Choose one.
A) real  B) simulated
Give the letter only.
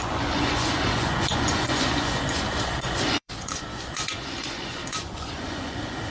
B